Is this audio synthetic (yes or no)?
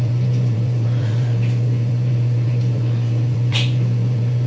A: yes